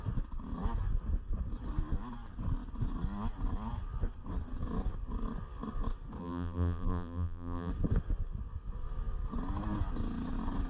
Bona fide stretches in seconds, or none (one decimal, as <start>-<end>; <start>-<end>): 0.0-6.2; 7.7-10.7